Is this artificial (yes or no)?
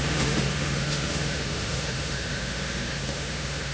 yes